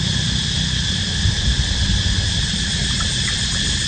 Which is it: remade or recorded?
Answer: recorded